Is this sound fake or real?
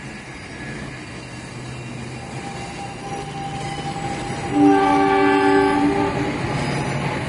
real